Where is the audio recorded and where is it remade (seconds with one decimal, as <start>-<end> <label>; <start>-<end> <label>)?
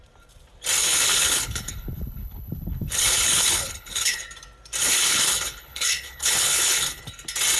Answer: 0.0-0.8 recorded; 0.8-4.2 remade; 4.2-4.8 recorded; 4.8-7.0 remade; 7.0-7.6 recorded